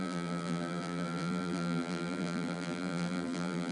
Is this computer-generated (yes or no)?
yes